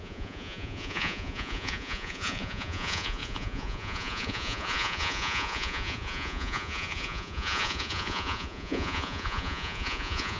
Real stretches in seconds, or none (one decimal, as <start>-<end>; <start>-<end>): none